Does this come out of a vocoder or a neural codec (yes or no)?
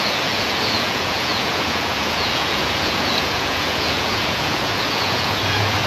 yes